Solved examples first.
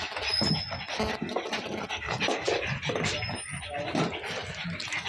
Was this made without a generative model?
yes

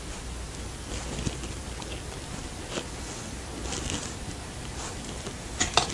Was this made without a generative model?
yes